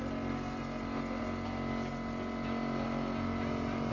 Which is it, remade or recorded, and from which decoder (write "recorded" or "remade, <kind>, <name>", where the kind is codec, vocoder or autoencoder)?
recorded